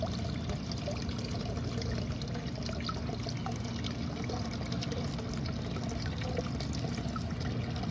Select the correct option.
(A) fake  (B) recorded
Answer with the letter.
B